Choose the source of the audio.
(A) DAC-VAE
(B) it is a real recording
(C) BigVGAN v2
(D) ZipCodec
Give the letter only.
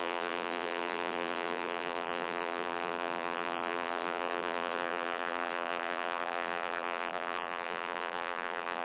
C